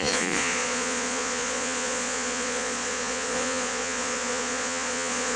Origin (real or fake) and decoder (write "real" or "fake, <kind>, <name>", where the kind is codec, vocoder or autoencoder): fake, vocoder, Vocos